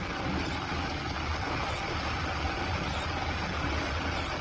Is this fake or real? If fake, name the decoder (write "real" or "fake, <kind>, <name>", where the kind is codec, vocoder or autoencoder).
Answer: real